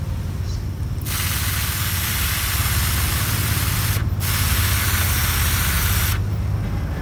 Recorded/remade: recorded